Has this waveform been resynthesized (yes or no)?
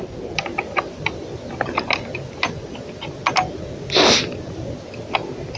no